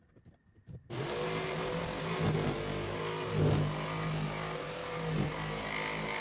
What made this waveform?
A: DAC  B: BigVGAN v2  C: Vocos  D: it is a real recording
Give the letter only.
D